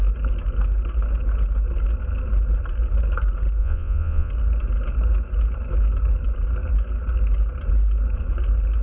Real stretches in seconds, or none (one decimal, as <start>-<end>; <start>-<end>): 0.0-3.6; 4.3-8.8